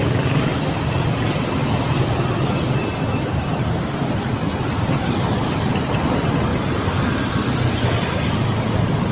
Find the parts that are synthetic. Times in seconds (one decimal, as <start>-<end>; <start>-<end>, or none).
none